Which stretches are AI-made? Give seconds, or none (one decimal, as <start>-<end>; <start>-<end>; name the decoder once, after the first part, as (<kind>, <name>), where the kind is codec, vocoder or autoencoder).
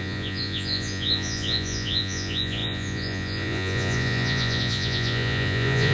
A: 0.0-5.9 (vocoder, Vocos)